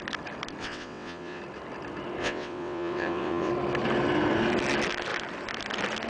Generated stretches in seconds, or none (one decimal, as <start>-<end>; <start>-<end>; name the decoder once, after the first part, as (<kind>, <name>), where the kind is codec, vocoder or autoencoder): 0.6-1.4 (vocoder, WaveNeXt); 2.2-3.5